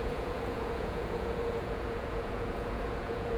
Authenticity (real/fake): fake